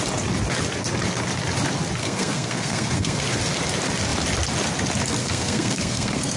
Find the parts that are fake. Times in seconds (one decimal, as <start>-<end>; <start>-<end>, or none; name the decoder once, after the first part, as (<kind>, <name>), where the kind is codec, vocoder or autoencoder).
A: 2.0-3.2 (codec, SNAC); 5.2-6.4